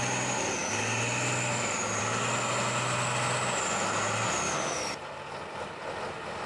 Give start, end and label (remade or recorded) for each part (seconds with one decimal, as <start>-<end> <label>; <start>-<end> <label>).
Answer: 0.0-6.5 recorded